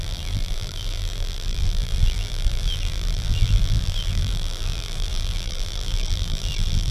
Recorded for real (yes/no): no